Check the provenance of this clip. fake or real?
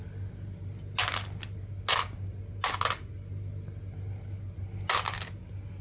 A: real